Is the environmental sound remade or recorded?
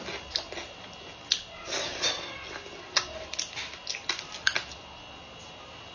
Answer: recorded